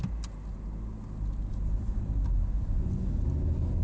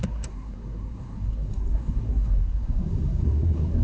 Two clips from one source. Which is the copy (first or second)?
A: second